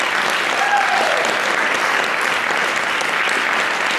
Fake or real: real